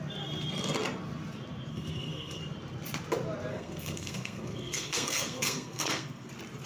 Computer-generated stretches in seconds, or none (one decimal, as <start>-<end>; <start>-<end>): 1.7-2.4; 3.5-6.3